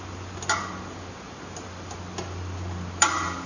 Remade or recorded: recorded